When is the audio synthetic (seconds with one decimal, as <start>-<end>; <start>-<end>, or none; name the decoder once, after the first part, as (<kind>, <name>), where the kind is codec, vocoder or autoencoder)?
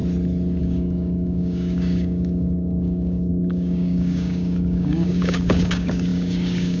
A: 0.6-6.8 (codec, DAC)